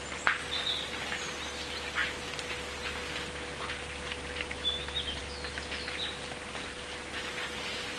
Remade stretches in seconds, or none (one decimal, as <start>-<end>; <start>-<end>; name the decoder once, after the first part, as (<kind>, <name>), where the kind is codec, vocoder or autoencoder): none